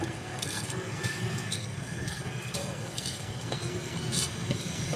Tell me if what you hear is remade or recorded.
remade